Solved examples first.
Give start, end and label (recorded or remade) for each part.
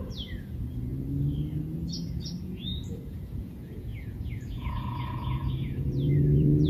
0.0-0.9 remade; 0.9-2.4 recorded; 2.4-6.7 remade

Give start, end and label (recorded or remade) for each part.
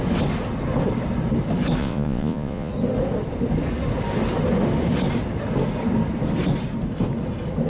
0.0-1.8 recorded; 1.8-2.7 remade; 2.7-7.7 recorded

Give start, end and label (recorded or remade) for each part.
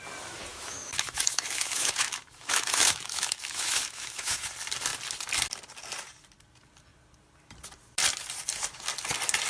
0.0-0.5 recorded; 0.5-4.5 remade; 4.5-9.5 recorded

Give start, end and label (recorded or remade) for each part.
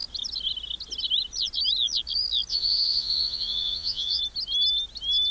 0.0-2.5 recorded; 2.5-4.2 remade; 4.2-5.3 recorded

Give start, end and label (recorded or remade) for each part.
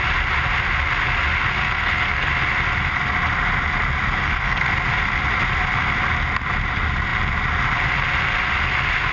0.0-1.6 recorded; 1.6-2.3 remade; 2.3-4.2 recorded; 4.2-4.7 remade; 4.7-9.1 recorded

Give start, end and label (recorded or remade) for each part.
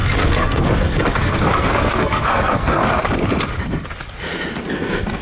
0.0-2.8 remade; 2.8-4.6 recorded; 4.6-5.2 remade